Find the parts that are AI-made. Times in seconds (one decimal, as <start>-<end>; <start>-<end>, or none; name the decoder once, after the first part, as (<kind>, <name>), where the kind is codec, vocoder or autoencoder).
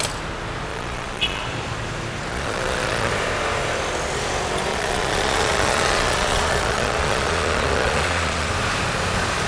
0.7-1.4 (vocoder, Vocos); 2.3-3.1; 4.7-8.5